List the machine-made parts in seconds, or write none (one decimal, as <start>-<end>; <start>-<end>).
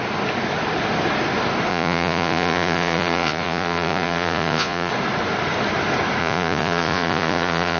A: 1.7-4.9; 6.2-7.8